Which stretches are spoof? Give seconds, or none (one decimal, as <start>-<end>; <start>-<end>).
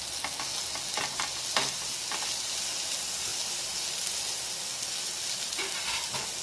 none